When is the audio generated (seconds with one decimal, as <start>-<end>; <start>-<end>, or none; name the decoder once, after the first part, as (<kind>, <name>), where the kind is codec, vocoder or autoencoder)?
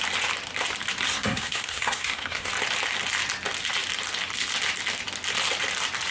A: 1.1-2.5 (codec, SNAC)